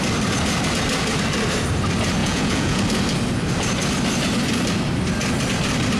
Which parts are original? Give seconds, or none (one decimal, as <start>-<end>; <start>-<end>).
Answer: 0.0-2.2; 2.8-6.0